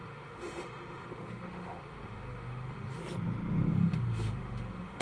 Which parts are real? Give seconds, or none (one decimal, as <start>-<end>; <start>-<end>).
3.0-3.7